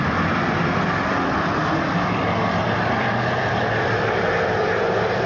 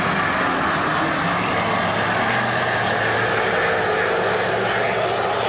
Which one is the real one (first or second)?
second